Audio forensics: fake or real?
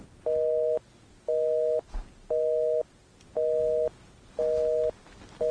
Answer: real